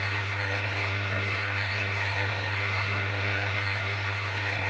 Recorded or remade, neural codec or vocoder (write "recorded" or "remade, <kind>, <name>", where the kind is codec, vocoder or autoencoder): remade, codec, SNAC